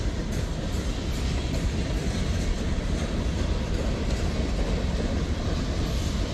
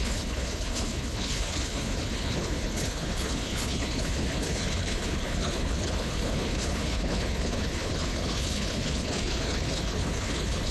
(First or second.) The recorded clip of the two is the first